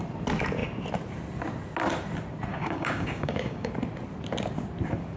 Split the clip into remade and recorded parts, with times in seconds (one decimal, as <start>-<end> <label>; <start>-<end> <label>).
0.0-2.5 recorded; 2.5-3.7 remade; 3.7-5.2 recorded